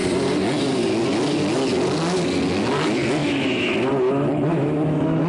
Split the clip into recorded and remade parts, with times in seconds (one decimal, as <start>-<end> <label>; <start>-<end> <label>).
0.0-3.2 recorded; 3.2-3.7 remade; 3.7-4.5 recorded; 4.5-5.3 remade